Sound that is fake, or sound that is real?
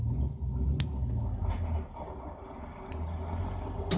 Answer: real